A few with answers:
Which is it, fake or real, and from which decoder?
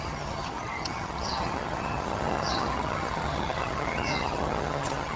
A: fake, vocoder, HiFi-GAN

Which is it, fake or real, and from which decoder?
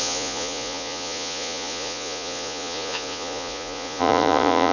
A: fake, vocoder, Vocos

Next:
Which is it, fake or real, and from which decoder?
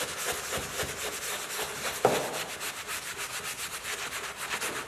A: real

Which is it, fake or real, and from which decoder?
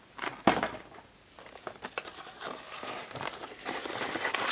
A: real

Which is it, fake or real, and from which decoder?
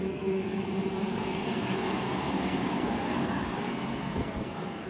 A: fake, codec, SNAC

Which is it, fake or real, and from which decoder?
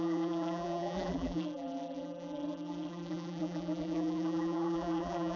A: fake, vocoder, BigVGAN v2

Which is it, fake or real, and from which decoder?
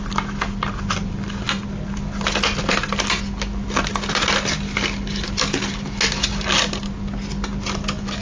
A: real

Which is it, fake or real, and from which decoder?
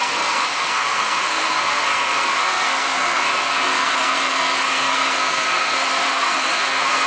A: fake, codec, SNAC